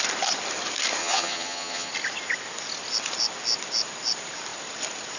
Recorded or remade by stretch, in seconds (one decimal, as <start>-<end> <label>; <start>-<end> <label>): 0.0-1.0 recorded; 1.0-1.9 remade; 1.9-5.2 recorded